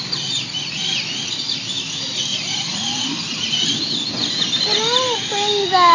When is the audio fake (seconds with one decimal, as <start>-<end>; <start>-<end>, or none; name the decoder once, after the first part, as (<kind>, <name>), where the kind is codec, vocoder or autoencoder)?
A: none